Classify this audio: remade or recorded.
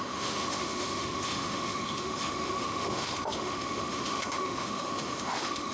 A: remade